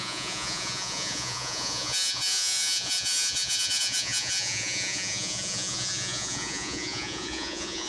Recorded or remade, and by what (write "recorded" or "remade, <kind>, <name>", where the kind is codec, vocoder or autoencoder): remade, vocoder, Vocos